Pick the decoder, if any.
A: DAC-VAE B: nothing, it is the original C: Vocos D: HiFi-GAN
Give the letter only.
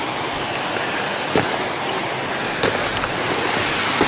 B